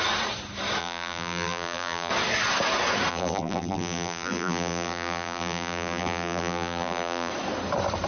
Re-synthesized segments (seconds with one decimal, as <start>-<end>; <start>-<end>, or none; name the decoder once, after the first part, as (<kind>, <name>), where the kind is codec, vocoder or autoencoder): 0.8-2.1 (vocoder, BigVGAN v2); 3.1-7.3